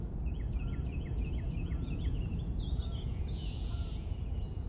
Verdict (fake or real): fake